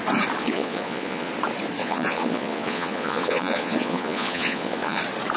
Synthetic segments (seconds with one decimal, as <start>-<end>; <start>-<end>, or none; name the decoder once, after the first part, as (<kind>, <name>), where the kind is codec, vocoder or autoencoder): 0.4-1.3 (vocoder, Vocos); 1.8-5.0